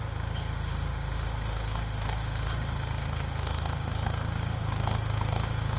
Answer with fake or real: fake